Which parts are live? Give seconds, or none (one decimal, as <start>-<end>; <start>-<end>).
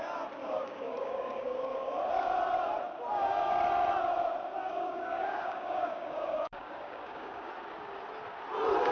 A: 0.0-0.4; 2.0-3.1; 3.6-4.6; 7.5-8.9